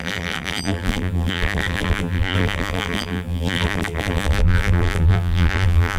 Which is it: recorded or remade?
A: remade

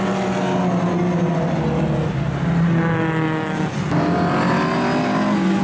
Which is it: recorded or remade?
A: recorded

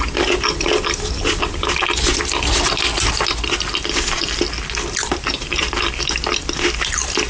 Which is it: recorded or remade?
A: recorded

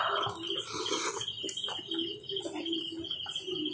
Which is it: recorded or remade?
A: recorded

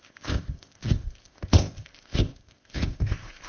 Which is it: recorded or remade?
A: remade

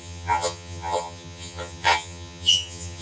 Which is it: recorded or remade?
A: remade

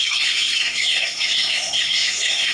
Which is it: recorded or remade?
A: remade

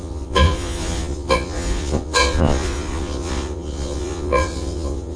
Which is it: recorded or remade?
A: remade